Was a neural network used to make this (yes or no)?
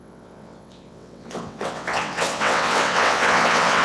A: yes